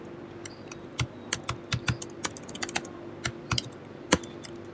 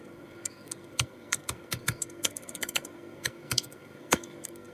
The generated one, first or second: second